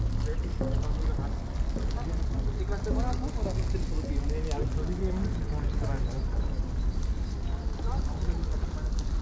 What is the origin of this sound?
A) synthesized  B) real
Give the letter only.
B